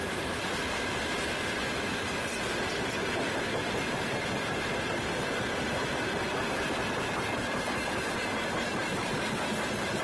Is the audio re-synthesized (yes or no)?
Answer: no